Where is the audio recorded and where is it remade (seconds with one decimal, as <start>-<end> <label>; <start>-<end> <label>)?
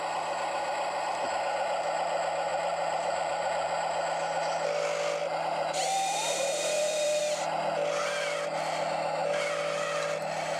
0.0-2.5 recorded; 2.5-3.7 remade; 3.7-5.2 recorded; 5.2-7.2 remade; 7.2-10.6 recorded